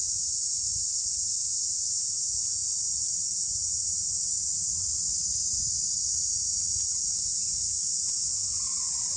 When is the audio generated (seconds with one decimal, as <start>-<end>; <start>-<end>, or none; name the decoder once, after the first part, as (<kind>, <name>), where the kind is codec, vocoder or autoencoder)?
0.7-1.4 (vocoder, Vocos); 2.6-7.1